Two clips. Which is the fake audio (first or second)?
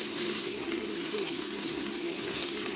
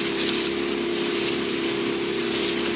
first